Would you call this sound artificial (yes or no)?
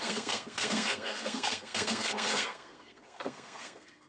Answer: yes